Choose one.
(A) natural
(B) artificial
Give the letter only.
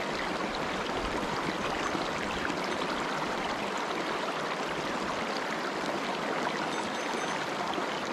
B